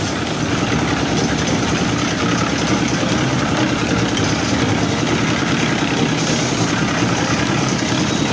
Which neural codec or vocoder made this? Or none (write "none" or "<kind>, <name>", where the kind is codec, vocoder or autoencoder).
none